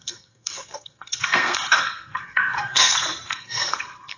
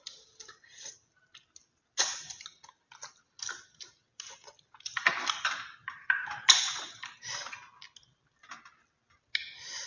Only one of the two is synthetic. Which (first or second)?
first